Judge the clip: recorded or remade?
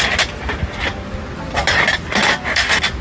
recorded